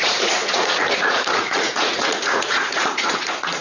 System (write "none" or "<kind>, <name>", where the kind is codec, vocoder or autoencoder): vocoder, Vocos